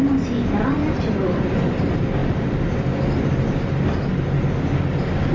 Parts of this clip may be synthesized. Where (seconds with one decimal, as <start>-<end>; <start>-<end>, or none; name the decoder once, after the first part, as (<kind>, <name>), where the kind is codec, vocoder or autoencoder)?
none